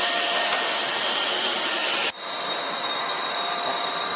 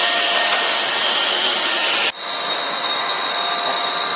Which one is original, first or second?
second